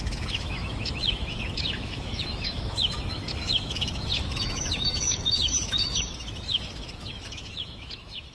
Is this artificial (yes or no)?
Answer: yes